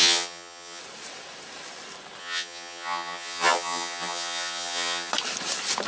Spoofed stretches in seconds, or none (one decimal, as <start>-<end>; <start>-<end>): 0.0-0.8; 2.2-5.1